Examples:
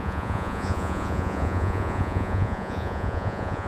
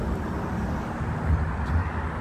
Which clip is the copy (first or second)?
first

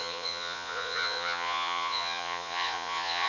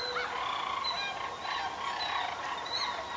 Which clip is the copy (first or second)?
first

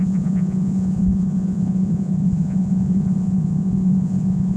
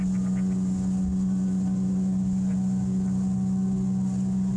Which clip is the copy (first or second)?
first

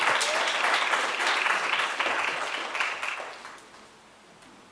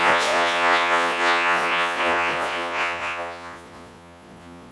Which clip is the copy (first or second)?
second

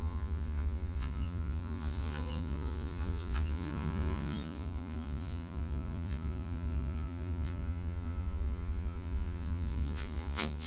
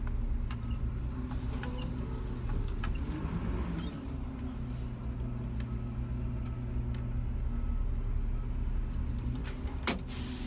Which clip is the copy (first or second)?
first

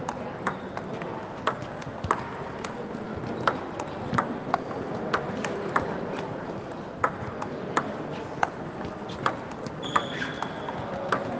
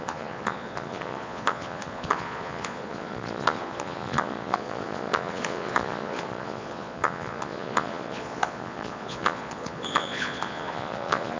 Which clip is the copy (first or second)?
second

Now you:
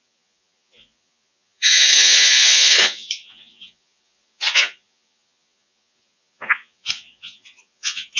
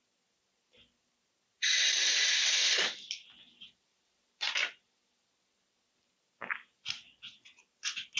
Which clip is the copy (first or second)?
first